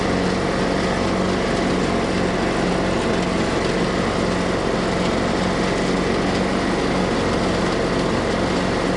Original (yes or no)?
yes